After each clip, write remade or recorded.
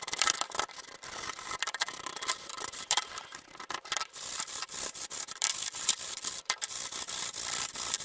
remade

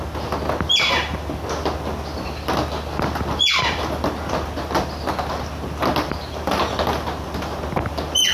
recorded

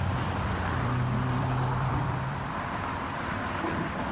remade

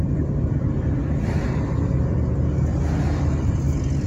recorded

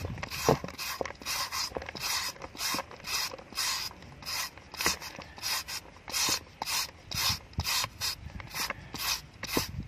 recorded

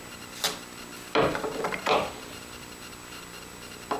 remade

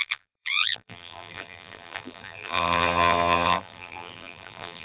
remade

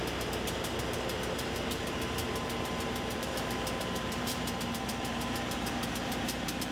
remade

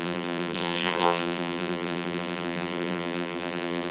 remade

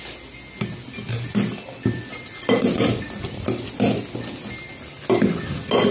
recorded